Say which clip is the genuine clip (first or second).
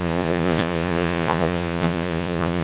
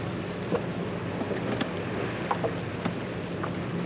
second